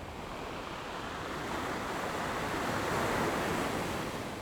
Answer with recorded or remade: recorded